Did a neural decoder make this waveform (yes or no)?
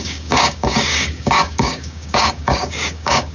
yes